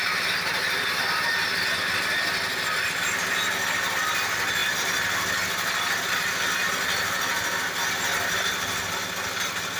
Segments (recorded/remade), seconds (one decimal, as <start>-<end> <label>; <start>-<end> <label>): 0.0-9.8 recorded